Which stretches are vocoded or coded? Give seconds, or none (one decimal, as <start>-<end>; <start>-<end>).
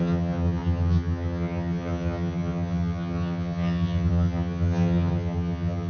0.0-5.9